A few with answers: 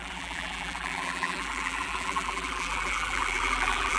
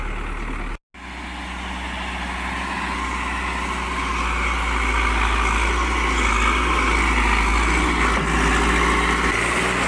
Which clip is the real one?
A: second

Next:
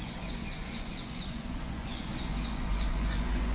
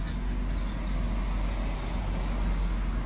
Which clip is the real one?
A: second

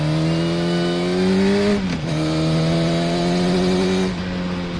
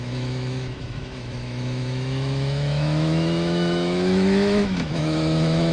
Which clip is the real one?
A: first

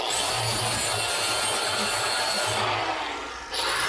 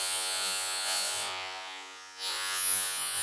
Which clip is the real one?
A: first